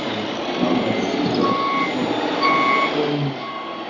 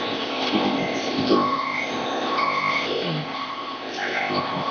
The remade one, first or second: second